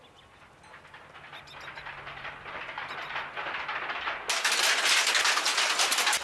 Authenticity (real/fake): real